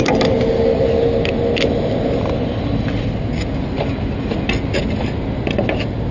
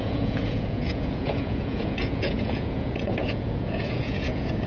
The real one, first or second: first